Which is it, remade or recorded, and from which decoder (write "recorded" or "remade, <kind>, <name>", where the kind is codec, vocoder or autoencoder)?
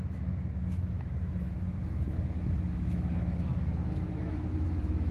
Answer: remade, autoencoder, DAC-VAE